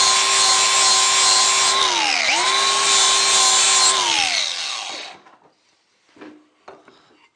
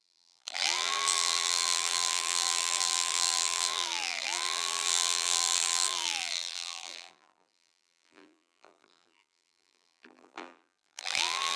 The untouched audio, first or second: first